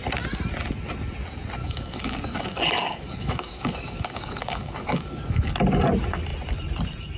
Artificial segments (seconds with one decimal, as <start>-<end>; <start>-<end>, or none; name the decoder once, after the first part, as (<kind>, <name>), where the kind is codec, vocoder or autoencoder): 1.6-5.5 (codec, DAC)

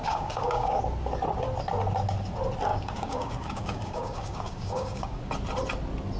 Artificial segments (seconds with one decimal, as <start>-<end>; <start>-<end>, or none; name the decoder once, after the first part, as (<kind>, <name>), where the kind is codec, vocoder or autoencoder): 0.0-0.8 (codec, DAC); 2.7-5.2

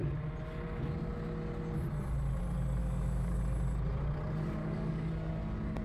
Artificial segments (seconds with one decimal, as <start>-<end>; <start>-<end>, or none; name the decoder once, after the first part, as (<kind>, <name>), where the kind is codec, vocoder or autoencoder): 2.8-3.4 (codec, DAC); 4.6-5.1